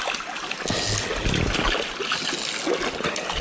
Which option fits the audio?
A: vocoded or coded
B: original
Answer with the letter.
B